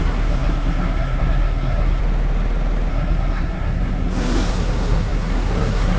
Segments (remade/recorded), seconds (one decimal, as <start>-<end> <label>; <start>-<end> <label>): 0.0-2.0 remade; 2.0-2.9 recorded; 2.9-6.0 remade